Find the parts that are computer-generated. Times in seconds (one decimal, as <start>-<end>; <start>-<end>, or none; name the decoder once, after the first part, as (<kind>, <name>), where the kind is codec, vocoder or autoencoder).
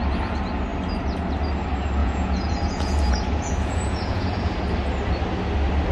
2.0-4.6 (vocoder, Vocos)